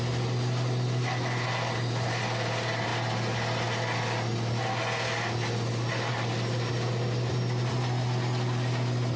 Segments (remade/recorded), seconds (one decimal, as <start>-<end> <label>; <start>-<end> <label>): 0.0-9.2 recorded